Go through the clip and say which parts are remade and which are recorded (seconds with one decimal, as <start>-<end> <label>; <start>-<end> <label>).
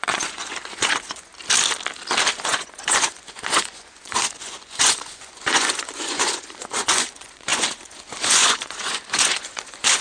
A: 0.0-1.3 remade; 1.3-2.3 recorded; 2.3-10.0 remade